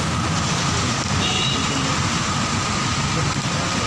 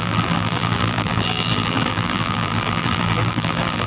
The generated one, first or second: second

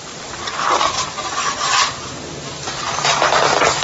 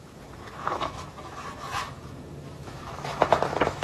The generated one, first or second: second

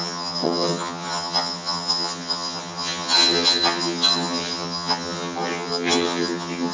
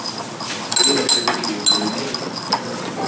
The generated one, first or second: first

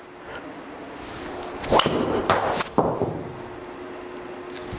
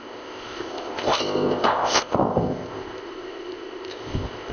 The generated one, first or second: second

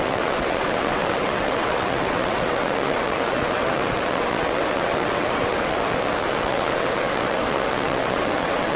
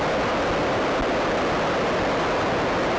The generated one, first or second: first